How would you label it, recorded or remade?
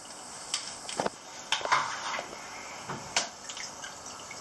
recorded